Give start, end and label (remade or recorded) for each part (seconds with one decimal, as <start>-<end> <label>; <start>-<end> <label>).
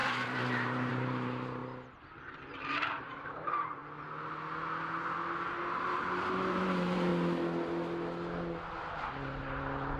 0.0-1.6 remade; 1.6-2.5 recorded; 2.5-3.8 remade; 3.8-5.7 recorded; 5.7-7.1 remade; 7.1-9.4 recorded; 9.4-10.0 remade